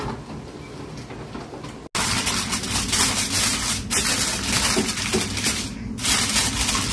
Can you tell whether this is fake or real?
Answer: real